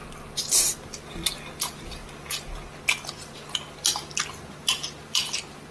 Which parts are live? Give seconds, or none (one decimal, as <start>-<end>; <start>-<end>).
0.0-1.6; 2.0-5.7